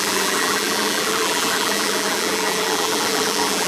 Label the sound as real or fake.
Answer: fake